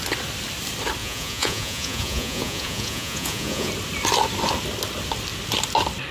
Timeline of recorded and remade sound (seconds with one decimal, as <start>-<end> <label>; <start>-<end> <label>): 0.0-1.0 recorded; 1.0-3.7 remade; 3.7-6.1 recorded